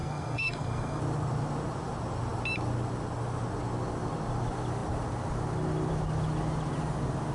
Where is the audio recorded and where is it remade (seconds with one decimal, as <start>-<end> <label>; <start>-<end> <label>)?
0.0-1.0 remade; 1.0-7.3 recorded